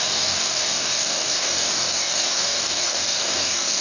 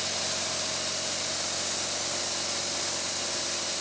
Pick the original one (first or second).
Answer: second